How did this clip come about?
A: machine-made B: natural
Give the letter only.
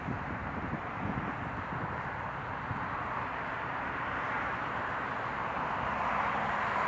B